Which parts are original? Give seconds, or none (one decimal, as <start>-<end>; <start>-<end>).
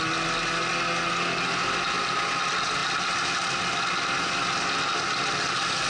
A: 0.0-5.9